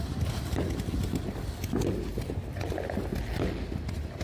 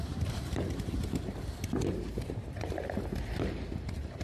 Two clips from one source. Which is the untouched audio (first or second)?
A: first